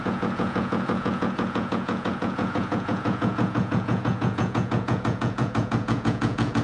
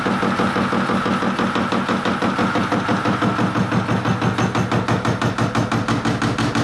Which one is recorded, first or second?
second